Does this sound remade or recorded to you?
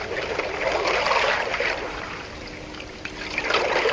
recorded